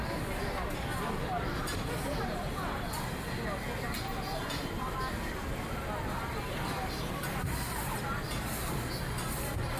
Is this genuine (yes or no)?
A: yes